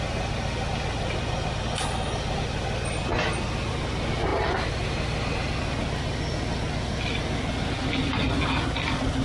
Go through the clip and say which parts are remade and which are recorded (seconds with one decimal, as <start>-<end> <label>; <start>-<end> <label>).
0.0-9.2 recorded